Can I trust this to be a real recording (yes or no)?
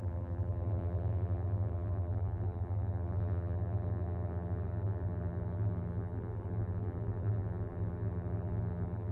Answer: no